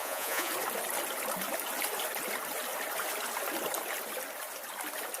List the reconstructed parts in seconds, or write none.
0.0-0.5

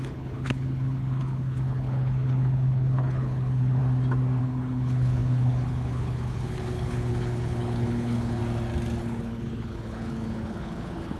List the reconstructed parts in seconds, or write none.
0.0-3.8; 4.4-8.4; 9.0-11.2

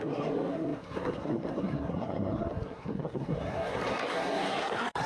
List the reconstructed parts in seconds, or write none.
0.0-5.1